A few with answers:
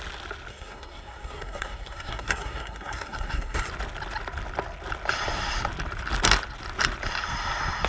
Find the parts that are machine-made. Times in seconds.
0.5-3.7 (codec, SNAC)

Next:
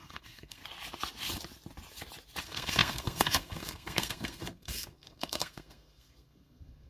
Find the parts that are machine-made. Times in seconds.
0.0-0.6 (codec, SNAC); 2.4-6.9

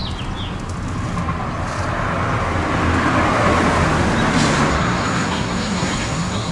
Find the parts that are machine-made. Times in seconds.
4.7-6.5 (codec, SNAC)

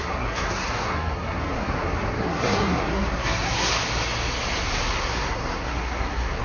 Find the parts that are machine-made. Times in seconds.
0.0-3.7 (codec, SNAC); 4.9-6.4

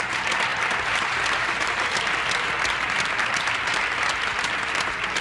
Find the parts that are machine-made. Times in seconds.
none

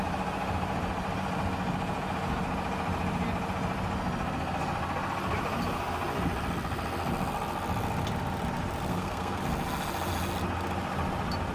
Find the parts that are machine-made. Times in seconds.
8.9-9.4 (codec, SNAC)

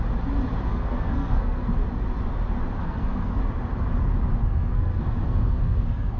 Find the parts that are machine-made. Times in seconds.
0.7-1.6 (codec, SNAC); 2.8-3.4; 4.4-6.2

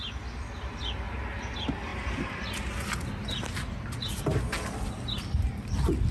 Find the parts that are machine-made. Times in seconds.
none